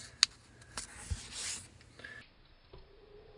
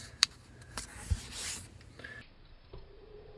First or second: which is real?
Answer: first